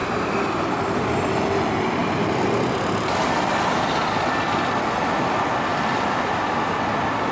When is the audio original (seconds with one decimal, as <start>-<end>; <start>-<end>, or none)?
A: 0.7-5.7; 6.4-7.3